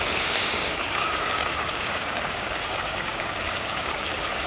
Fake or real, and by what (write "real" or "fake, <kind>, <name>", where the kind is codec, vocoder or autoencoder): fake, codec, DAC